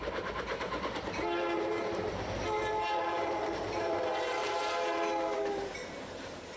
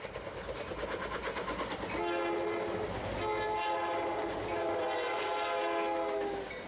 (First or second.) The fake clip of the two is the first